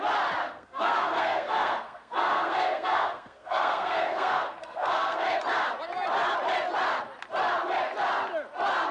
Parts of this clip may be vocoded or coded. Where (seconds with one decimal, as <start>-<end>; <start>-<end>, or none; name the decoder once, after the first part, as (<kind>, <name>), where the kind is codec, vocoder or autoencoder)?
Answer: 0.4-5.4 (codec, SNAC)